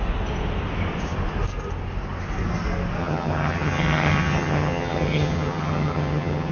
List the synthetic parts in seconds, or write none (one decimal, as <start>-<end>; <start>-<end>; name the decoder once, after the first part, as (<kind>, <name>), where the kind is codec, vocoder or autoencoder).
3.0-6.5 (vocoder, HiFi-GAN)